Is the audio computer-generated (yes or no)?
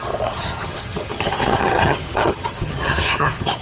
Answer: yes